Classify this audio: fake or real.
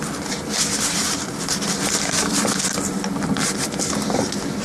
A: fake